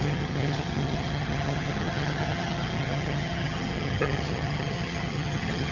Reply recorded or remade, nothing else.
remade